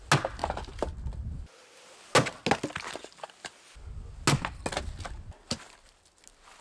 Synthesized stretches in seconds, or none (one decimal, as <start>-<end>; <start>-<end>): none